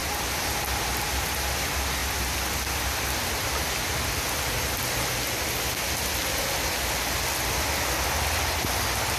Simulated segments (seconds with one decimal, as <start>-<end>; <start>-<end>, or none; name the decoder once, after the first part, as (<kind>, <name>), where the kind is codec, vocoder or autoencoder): none